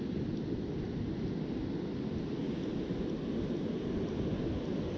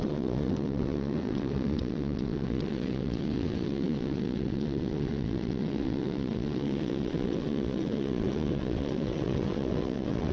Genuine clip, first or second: first